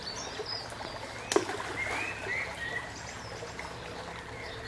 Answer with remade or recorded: recorded